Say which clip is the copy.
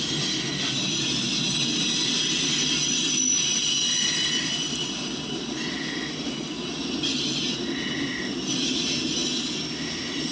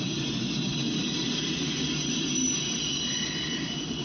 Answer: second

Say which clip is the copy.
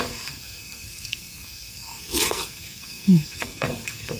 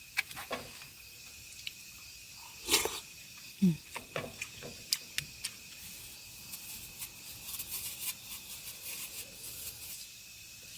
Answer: first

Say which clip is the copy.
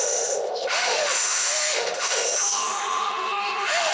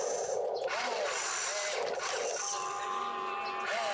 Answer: first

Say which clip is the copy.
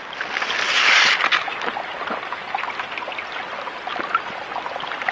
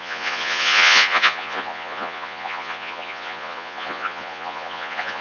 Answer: second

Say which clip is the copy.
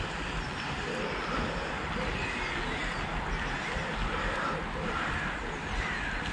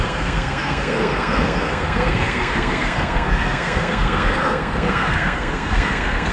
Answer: second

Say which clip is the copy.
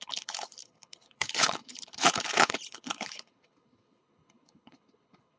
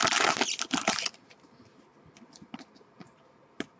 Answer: first